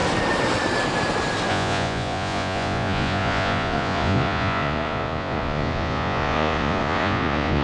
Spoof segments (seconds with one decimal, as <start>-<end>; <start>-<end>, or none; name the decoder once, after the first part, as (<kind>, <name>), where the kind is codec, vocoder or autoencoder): 1.5-7.6 (vocoder, Vocos)